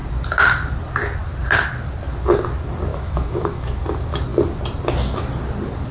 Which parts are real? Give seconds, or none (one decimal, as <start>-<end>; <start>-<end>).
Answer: 0.0-2.9; 3.8-5.9